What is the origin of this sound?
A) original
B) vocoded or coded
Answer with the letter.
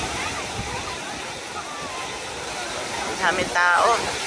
A